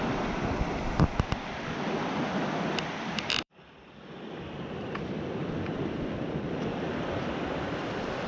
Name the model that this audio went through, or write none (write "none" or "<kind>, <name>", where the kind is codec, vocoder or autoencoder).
vocoder, BigVGAN v2